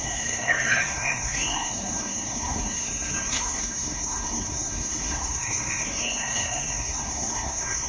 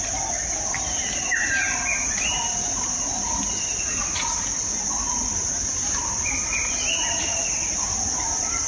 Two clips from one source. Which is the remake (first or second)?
first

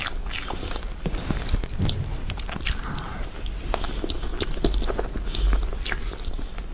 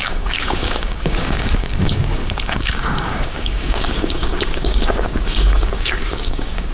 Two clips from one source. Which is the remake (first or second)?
second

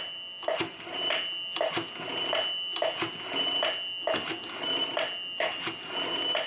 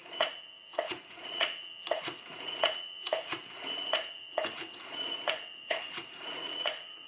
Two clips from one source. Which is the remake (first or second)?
second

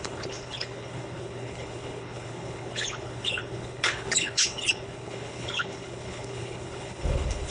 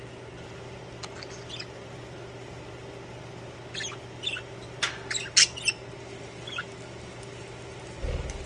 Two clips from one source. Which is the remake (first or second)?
first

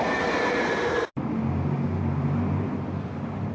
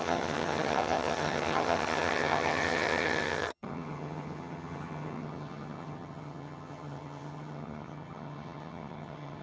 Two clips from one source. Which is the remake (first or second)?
second